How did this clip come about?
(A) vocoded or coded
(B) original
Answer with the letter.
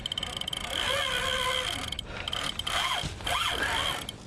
B